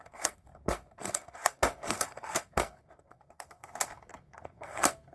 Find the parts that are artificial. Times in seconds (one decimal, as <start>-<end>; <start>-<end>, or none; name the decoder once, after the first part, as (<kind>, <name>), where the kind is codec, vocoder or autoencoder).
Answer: 0.0-5.1 (codec, SNAC)